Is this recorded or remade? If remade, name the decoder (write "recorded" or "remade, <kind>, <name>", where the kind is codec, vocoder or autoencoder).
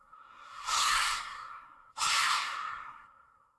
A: remade, codec, SNAC